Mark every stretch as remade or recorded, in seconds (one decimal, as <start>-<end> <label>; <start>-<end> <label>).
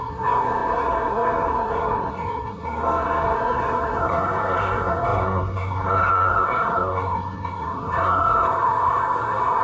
0.0-9.6 remade